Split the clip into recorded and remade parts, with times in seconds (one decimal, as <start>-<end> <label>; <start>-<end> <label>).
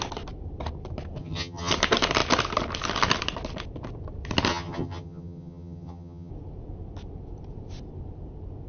0.0-1.2 recorded; 1.2-1.7 remade; 1.7-4.5 recorded; 4.5-6.3 remade; 6.3-8.7 recorded